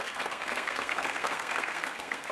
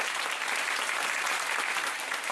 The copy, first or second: first